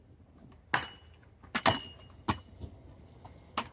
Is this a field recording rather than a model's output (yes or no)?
yes